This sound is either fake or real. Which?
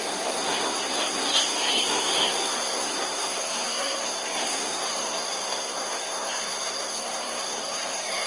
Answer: fake